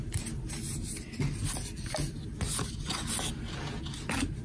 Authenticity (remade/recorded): recorded